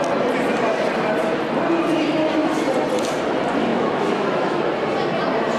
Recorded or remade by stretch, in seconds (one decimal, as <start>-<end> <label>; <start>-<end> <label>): 0.0-3.7 recorded; 3.7-4.6 remade; 4.6-5.6 recorded